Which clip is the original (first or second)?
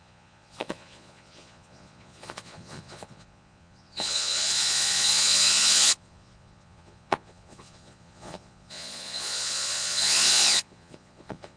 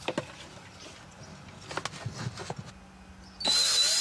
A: second